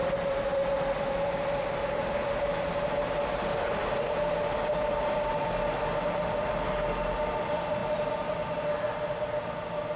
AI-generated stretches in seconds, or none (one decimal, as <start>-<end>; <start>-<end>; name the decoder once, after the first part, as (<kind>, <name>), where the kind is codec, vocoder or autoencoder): none